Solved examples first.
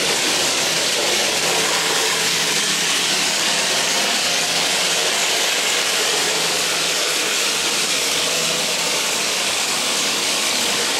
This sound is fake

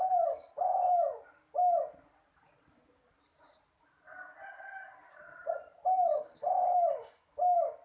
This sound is real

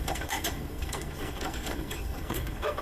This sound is fake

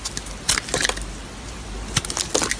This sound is real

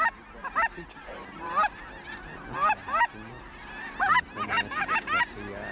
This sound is real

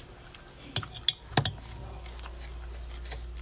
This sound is real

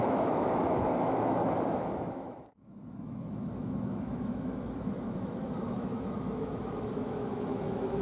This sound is fake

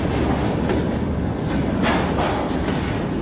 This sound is real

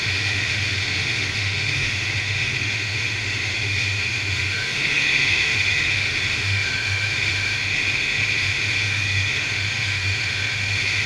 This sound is fake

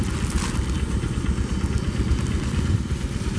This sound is real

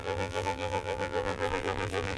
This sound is fake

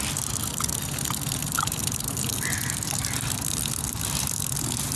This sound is real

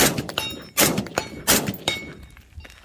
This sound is real